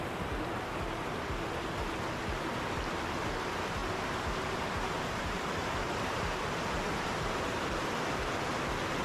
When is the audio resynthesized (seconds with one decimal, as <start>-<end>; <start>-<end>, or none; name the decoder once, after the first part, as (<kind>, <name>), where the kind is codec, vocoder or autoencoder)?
3.8-7.4 (vocoder, BigVGAN v2)